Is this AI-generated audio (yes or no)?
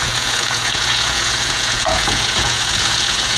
yes